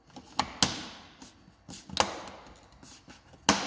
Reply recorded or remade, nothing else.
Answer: recorded